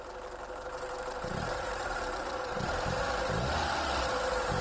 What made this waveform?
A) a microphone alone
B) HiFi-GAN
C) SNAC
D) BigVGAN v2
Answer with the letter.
A